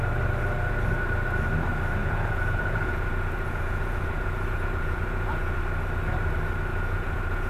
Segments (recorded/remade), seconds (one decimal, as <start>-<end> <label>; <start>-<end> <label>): 0.0-2.0 recorded; 2.0-5.6 remade; 5.6-6.7 recorded; 6.7-7.5 remade